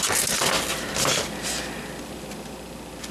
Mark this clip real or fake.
real